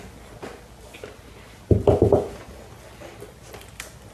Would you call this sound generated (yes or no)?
no